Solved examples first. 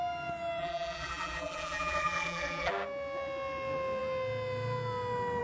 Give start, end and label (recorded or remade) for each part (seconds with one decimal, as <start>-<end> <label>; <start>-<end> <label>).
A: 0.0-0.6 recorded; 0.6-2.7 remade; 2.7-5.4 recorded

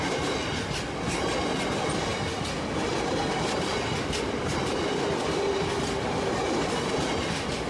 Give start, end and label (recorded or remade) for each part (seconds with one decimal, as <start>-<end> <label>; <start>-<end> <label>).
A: 0.0-0.4 remade; 0.4-1.4 recorded; 1.4-2.1 remade; 2.1-2.8 recorded; 2.8-7.7 remade

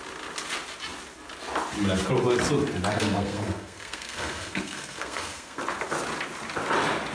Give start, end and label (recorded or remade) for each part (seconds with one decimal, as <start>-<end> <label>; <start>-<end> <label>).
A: 0.0-2.9 recorded; 2.9-5.6 remade; 5.6-7.1 recorded

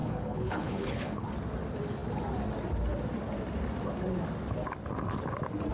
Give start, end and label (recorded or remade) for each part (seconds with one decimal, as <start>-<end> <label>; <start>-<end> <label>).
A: 0.0-1.3 remade; 1.3-5.7 recorded

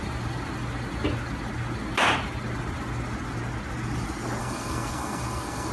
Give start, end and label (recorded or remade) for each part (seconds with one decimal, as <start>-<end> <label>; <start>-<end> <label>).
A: 0.0-4.4 recorded; 4.4-5.7 remade